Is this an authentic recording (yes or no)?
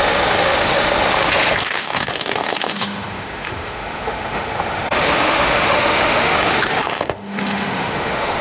no